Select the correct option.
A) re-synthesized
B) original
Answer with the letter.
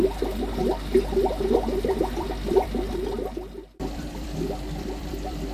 A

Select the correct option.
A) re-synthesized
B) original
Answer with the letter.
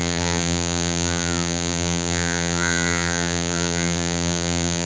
A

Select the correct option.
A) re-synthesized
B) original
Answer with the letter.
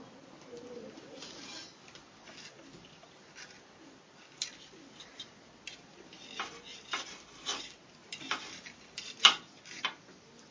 B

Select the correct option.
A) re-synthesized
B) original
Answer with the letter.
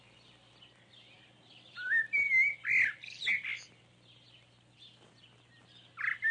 B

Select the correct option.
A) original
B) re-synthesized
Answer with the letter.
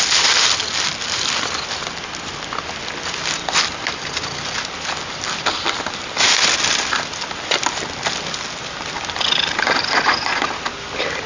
A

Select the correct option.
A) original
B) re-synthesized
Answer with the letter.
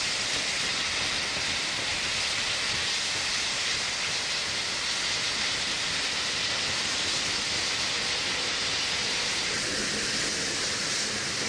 A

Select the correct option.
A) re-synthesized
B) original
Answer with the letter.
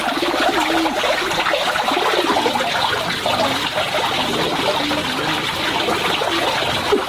B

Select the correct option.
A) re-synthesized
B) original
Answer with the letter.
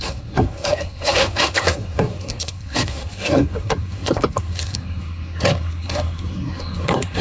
A